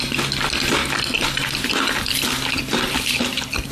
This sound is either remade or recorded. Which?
recorded